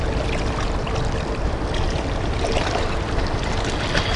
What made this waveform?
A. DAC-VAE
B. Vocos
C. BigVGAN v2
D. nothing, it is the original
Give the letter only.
D